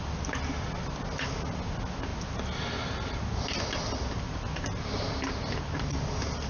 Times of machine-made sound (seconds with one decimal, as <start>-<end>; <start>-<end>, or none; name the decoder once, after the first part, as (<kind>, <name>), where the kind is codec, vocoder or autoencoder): none